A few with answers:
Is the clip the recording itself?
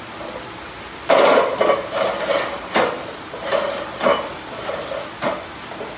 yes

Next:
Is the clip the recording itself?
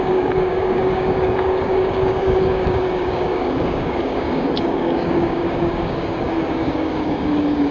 no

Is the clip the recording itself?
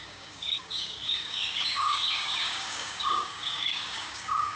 no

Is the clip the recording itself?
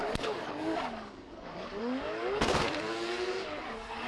no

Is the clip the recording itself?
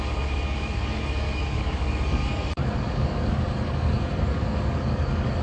no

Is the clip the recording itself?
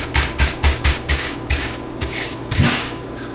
no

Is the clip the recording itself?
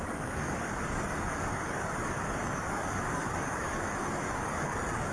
no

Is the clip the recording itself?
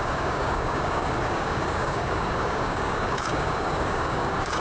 no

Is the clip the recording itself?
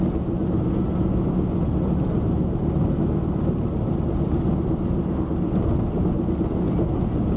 yes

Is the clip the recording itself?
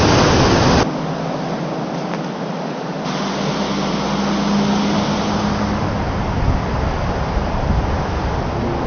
yes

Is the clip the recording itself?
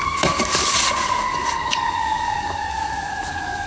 no